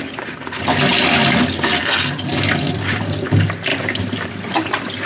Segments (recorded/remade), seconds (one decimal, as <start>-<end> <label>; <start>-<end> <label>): 0.0-1.8 recorded; 1.8-3.0 remade; 3.0-3.7 recorded; 3.7-5.1 remade